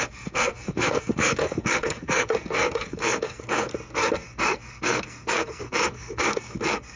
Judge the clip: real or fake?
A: fake